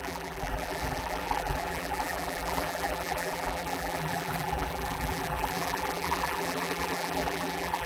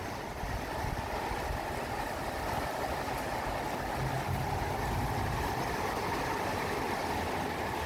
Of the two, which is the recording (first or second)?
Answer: second